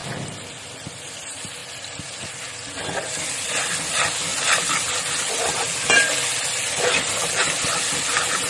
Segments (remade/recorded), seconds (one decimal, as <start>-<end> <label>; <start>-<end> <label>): 0.0-0.5 recorded; 0.5-1.6 remade; 1.6-3.9 recorded; 3.9-8.5 remade